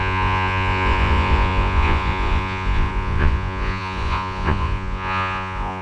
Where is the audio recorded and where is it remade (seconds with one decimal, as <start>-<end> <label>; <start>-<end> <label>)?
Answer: 0.0-5.8 remade